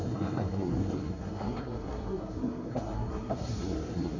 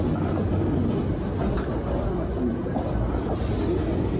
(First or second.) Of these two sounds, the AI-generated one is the first